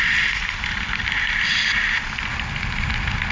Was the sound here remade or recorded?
recorded